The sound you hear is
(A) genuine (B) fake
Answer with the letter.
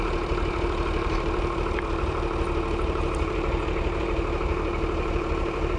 B